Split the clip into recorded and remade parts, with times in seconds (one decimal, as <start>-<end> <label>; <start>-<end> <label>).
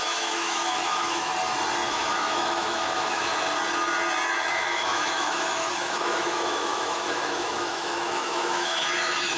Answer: 0.0-1.3 remade; 1.3-1.9 recorded; 1.9-3.3 remade; 3.3-4.5 recorded; 4.5-9.4 remade